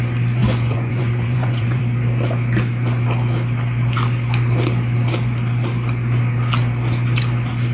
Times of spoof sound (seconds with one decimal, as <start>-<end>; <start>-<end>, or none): 0.4-1.8